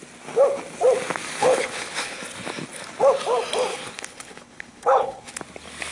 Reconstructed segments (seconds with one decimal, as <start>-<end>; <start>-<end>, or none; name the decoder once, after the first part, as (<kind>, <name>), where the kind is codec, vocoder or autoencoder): 1.4-2.2 (codec, HILCodec); 3.7-5.3